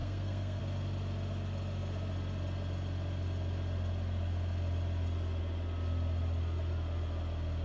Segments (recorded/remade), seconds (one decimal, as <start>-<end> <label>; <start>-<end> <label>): 0.0-0.6 remade; 0.6-7.6 recorded